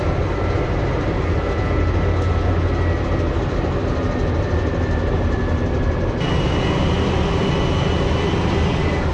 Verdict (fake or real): real